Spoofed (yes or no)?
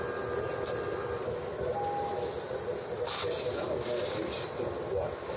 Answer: no